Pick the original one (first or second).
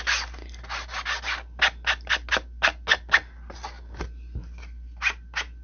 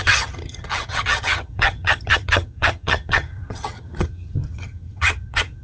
first